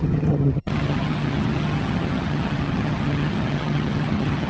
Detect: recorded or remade remade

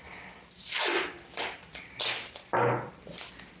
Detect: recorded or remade recorded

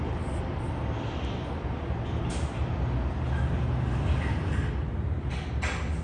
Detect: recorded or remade recorded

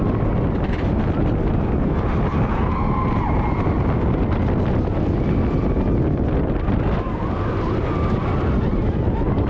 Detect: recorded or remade recorded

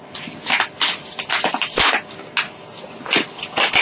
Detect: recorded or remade recorded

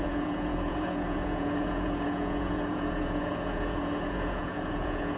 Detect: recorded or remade remade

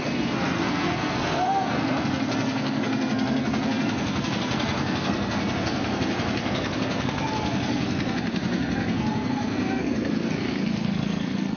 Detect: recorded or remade remade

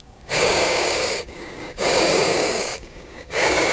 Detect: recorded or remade remade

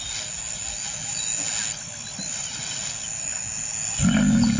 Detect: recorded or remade recorded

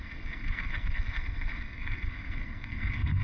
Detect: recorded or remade remade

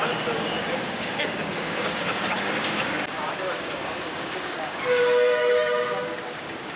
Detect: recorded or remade remade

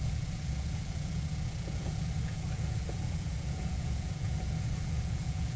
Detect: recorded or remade remade